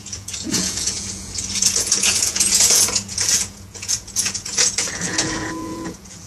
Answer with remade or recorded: remade